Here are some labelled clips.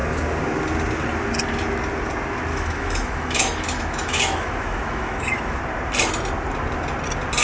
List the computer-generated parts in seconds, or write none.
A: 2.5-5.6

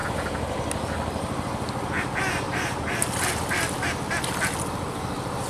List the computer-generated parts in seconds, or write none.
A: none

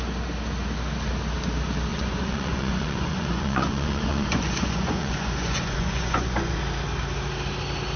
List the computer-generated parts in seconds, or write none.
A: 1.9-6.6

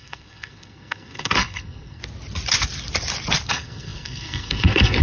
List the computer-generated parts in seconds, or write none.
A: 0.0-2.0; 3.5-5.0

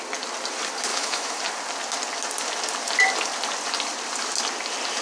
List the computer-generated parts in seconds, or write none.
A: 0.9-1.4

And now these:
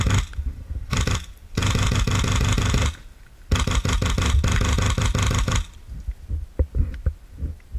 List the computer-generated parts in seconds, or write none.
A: none